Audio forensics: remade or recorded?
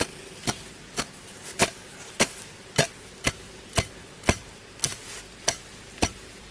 recorded